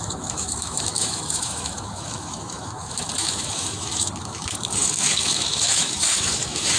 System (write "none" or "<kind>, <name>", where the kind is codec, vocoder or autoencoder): autoencoder, DAC-VAE